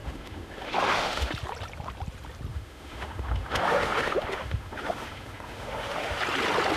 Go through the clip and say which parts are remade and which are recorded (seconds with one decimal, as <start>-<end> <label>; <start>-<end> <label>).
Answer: 0.0-1.3 remade; 1.3-2.5 recorded; 2.5-6.2 remade; 6.2-6.8 recorded